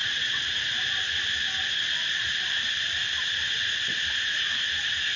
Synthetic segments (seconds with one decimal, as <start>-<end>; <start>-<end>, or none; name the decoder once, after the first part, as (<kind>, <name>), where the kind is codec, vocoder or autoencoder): 0.0-0.6 (vocoder, WaveNeXt)